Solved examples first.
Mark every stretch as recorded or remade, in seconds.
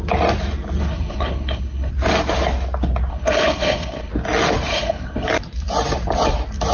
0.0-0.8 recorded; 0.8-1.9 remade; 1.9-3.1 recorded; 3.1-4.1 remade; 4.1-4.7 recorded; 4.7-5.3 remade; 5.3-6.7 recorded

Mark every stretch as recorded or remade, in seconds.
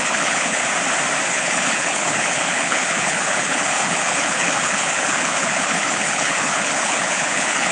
0.0-0.6 remade; 0.6-1.3 recorded; 1.3-7.7 remade